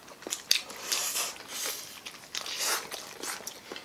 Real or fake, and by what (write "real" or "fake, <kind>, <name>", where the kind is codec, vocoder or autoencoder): real